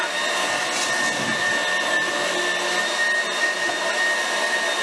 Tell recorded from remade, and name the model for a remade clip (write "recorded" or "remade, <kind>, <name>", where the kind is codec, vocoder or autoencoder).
recorded